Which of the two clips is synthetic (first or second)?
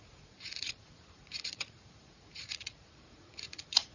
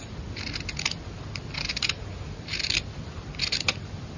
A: first